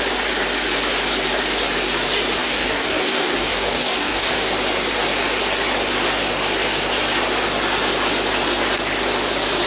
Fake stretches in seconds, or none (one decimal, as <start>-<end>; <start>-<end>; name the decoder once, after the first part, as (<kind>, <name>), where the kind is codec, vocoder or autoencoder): 2.4-4.3 (codec, DAC)